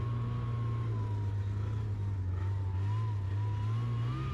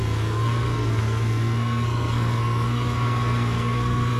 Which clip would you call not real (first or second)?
second